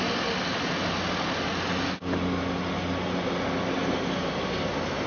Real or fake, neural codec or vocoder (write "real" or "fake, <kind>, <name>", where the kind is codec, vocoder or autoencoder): real